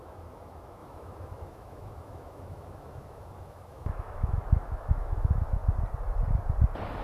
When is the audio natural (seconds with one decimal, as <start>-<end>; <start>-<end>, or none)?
5.6-7.0